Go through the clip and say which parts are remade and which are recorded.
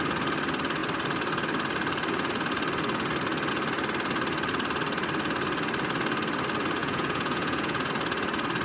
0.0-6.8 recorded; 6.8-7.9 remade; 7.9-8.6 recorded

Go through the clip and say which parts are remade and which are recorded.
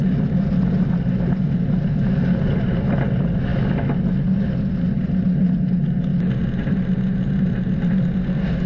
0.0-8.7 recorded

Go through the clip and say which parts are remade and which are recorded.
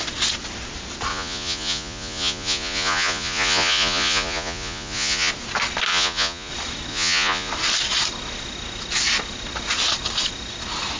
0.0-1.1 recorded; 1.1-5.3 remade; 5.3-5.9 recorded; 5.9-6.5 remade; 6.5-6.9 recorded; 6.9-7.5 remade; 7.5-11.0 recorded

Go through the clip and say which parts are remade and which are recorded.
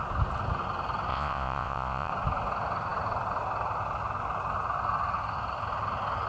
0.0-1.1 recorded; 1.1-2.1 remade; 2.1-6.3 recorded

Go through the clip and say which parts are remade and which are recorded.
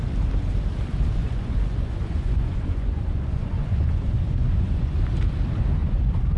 0.0-1.2 recorded; 1.2-5.0 remade; 5.0-5.8 recorded; 5.8-6.4 remade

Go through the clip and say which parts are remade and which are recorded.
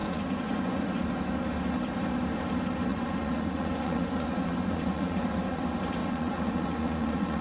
0.0-1.0 remade; 1.0-2.9 recorded; 2.9-5.6 remade; 5.6-6.0 recorded; 6.0-7.4 remade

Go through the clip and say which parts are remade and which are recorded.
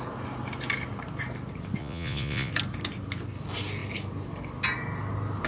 0.0-1.8 recorded; 1.8-2.5 remade; 2.5-5.5 recorded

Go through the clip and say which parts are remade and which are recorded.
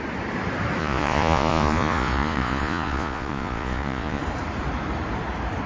0.0-0.8 recorded; 0.8-4.2 remade; 4.2-5.7 recorded